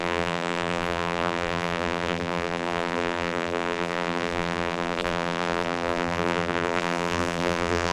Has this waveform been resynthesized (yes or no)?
yes